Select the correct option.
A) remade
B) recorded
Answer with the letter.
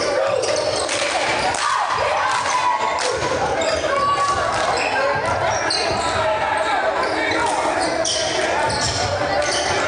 B